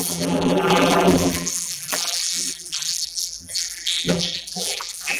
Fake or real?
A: fake